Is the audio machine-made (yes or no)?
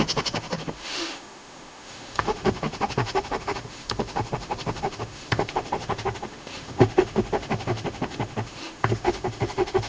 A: yes